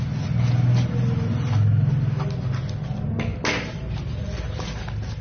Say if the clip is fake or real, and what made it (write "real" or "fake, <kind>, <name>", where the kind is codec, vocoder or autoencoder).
real